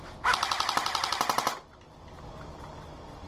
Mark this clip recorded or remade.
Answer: recorded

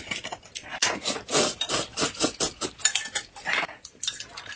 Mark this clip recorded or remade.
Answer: recorded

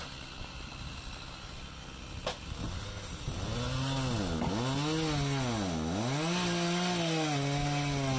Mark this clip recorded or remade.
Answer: recorded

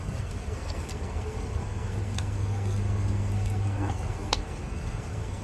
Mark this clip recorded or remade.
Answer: remade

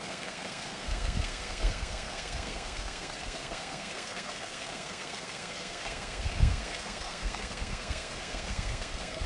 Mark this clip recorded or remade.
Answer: remade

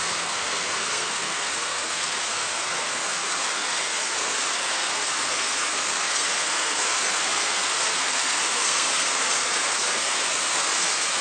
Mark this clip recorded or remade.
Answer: remade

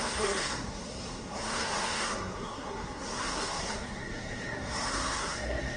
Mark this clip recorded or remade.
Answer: remade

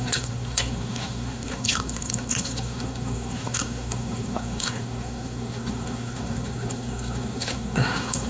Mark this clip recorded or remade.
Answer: remade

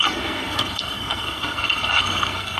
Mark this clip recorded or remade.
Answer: remade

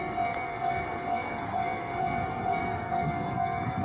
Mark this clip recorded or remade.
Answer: remade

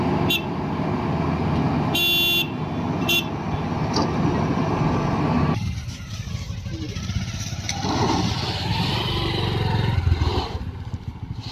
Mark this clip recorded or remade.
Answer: recorded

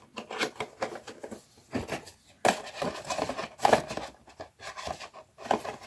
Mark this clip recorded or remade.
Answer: recorded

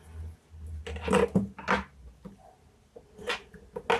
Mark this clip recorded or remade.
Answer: recorded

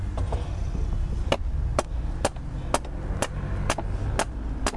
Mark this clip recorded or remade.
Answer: recorded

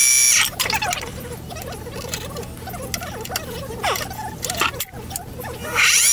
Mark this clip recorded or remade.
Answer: recorded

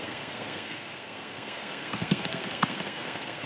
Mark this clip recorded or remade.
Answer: remade